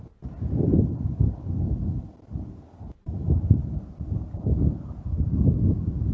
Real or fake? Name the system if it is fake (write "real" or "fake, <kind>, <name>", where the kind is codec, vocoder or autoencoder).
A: real